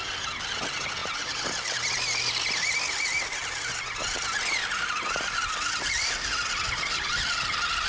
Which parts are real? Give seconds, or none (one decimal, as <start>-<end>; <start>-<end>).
0.0-7.9